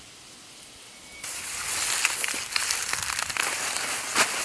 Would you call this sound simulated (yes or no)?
no